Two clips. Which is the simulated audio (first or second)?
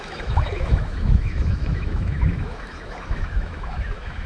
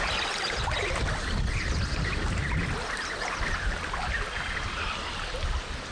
first